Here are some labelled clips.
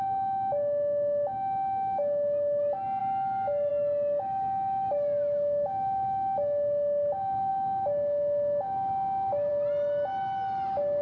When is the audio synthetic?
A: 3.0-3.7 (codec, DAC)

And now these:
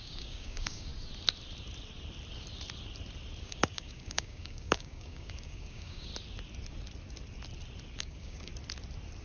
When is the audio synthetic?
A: 0.0-0.9 (codec, DAC); 3.4-6.1; 8.0-8.5

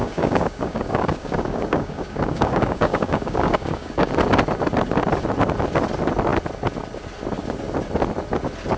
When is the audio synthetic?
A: 0.0-4.1 (codec, DAC)

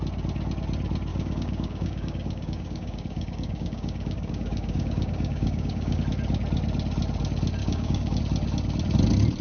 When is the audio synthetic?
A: 1.1-6.0 (codec, DAC); 7.6-8.2

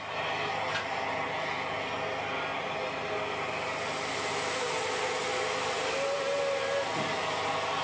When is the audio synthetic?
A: none

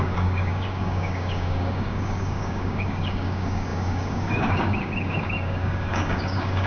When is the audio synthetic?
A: 0.0-6.7 (codec, DAC)

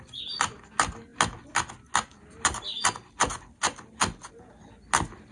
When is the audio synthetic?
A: none

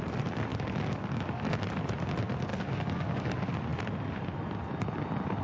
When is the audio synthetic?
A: 0.5-1.5 (codec, DAC); 2.5-3.3